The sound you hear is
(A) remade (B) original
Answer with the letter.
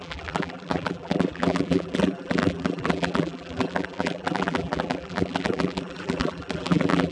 A